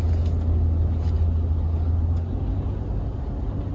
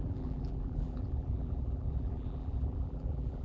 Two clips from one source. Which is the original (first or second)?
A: first